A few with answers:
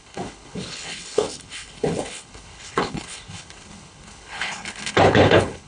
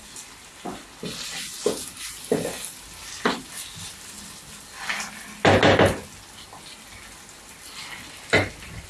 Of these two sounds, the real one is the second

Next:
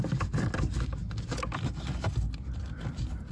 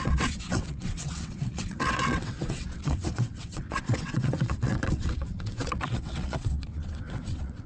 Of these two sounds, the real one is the first